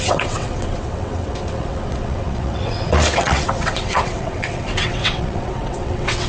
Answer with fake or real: fake